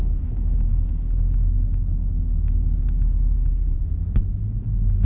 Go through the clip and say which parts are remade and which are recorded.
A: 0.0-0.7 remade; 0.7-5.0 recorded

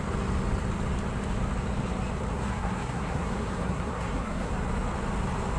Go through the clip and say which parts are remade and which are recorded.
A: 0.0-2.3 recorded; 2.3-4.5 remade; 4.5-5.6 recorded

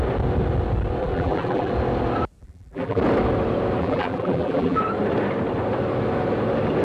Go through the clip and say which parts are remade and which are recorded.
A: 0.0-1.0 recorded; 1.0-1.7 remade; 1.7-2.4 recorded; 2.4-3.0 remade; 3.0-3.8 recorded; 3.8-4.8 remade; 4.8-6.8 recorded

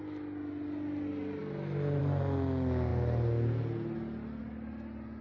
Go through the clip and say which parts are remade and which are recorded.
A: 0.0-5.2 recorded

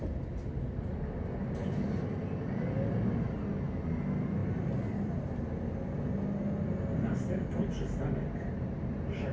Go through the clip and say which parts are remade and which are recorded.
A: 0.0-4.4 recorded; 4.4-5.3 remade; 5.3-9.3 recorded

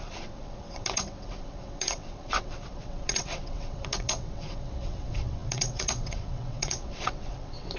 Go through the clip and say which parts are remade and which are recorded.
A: 0.0-7.8 remade

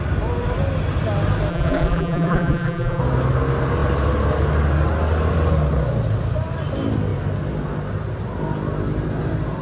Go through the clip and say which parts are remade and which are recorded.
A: 0.0-1.5 recorded; 1.5-3.0 remade; 3.0-9.6 recorded